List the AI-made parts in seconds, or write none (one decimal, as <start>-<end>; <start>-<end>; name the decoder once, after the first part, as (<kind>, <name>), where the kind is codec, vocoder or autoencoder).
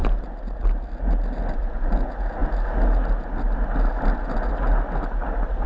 none